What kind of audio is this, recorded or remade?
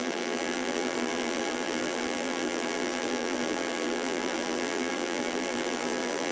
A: remade